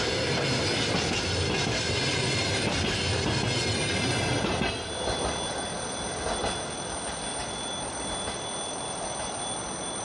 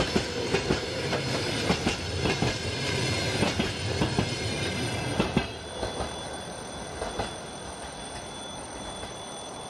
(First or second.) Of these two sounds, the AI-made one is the second